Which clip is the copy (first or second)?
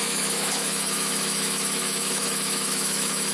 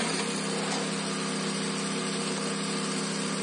first